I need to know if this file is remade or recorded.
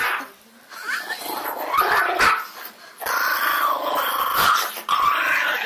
recorded